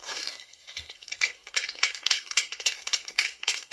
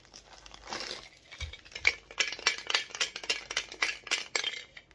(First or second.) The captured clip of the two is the second